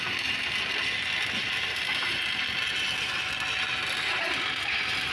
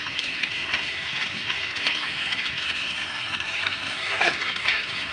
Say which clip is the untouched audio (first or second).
first